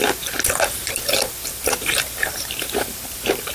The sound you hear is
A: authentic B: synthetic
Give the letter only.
B